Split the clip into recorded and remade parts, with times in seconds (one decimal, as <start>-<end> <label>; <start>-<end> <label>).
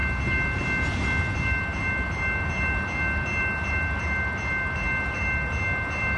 0.0-6.2 recorded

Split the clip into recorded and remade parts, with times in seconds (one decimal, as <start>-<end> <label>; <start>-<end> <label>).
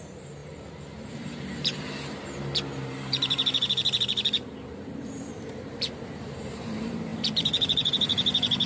0.0-8.7 remade